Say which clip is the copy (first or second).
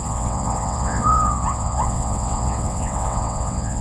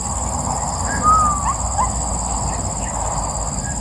first